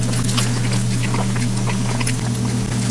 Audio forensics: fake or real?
real